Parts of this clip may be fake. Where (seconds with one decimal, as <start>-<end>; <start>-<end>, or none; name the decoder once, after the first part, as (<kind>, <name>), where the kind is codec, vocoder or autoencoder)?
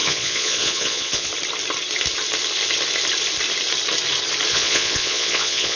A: 0.0-1.3 (vocoder, Vocos); 4.5-5.8